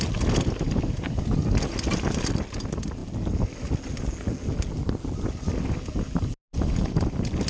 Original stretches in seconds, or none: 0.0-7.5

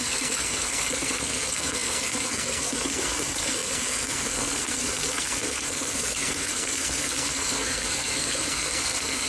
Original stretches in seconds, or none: none

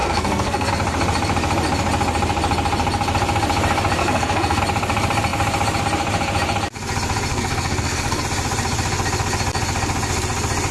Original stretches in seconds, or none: 0.7-4.0; 4.6-7.3; 8.2-10.7

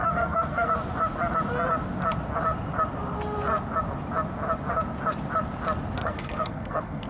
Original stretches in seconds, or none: 0.7-6.0